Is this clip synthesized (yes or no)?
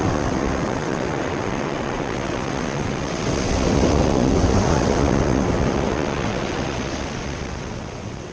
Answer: yes